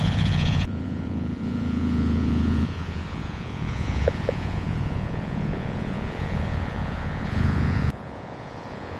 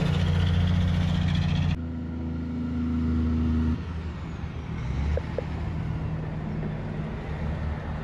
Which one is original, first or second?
second